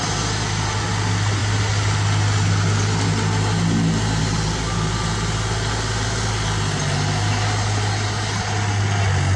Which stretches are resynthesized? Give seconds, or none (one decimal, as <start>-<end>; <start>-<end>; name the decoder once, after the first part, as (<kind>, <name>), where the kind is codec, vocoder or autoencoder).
none